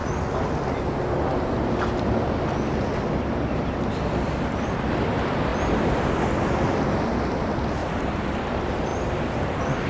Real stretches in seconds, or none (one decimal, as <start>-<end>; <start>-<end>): 0.0-5.5; 6.3-8.9